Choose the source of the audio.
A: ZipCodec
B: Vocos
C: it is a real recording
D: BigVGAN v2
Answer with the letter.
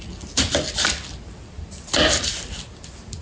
C